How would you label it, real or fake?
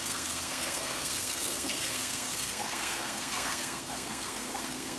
fake